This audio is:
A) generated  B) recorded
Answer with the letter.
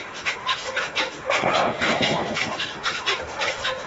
A